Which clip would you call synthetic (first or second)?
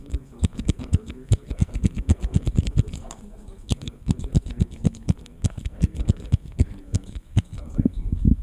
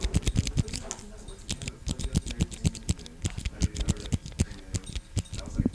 first